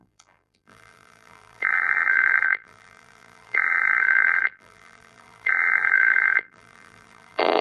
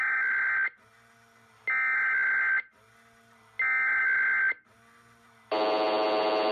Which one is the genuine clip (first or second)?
second